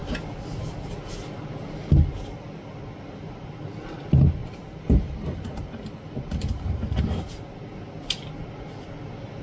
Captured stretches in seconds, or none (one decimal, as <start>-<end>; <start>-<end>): 0.0-4.4; 6.9-9.4